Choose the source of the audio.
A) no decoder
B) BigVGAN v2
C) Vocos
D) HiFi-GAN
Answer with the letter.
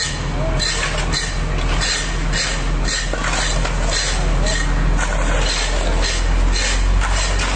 A